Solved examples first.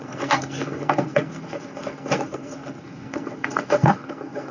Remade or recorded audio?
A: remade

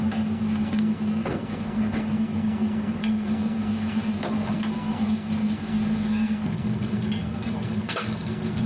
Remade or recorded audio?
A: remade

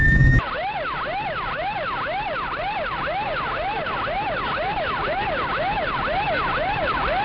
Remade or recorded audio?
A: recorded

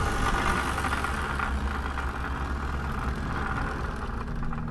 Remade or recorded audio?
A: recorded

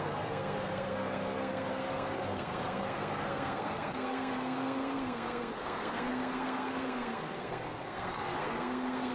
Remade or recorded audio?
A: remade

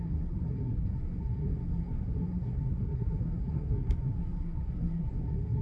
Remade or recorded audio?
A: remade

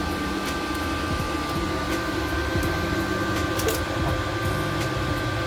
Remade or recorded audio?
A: recorded